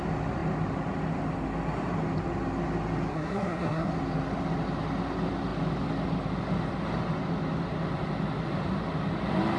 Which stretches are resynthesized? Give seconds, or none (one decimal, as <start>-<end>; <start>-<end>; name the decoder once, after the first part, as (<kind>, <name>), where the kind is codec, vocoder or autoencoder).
3.1-3.9 (codec, SNAC)